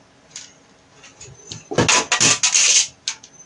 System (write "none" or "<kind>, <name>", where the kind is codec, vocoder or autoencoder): none